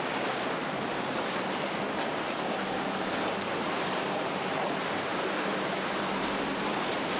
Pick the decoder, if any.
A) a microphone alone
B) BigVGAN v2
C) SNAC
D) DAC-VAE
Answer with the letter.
A